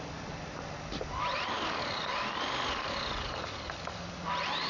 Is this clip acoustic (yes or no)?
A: no